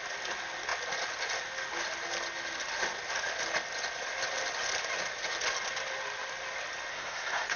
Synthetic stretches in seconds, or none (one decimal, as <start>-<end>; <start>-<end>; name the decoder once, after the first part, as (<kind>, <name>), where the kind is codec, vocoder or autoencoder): 6.9-7.6 (codec, SNAC)